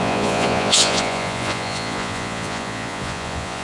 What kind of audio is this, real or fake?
fake